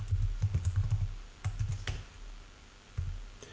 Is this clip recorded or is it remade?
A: recorded